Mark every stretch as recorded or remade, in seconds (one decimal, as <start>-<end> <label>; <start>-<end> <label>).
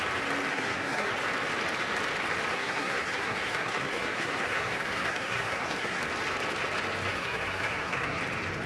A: 0.0-0.5 recorded; 0.5-1.1 remade; 1.1-2.5 recorded; 2.5-6.0 remade; 6.0-7.1 recorded; 7.1-8.2 remade; 8.2-8.7 recorded